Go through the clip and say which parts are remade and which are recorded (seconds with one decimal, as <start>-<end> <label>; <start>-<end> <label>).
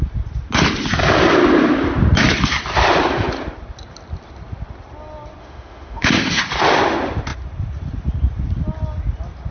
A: 0.0-5.4 recorded; 5.4-6.4 remade; 6.4-9.5 recorded